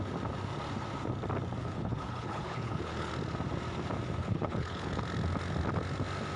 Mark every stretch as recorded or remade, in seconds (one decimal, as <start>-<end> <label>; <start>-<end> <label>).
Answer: 0.0-1.6 recorded; 1.6-3.1 remade; 3.1-4.2 recorded; 4.2-5.0 remade; 5.0-6.4 recorded